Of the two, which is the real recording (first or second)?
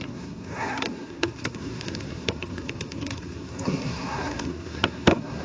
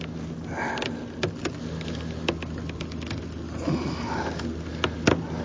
second